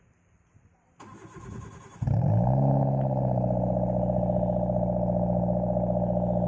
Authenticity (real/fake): real